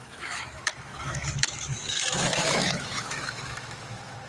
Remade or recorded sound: remade